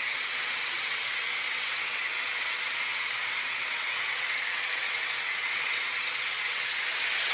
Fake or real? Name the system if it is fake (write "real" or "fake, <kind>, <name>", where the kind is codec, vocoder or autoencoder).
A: fake, vocoder, WaveNeXt